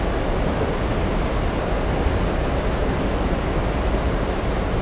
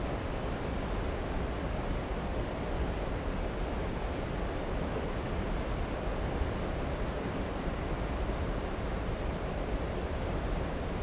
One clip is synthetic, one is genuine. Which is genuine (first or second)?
first